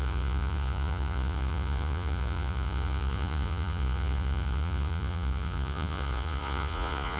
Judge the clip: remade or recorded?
remade